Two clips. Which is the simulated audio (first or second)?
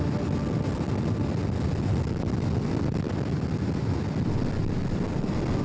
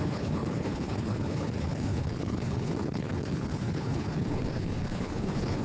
second